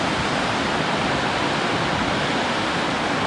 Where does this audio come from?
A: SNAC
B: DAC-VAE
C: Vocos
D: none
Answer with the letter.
D